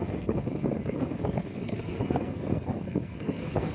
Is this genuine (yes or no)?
no